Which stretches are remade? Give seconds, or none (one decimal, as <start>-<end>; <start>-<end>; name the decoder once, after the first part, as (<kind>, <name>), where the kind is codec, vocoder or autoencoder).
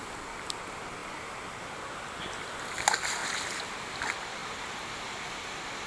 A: none